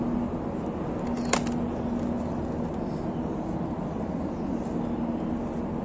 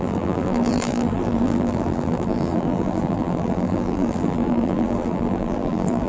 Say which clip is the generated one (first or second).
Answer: second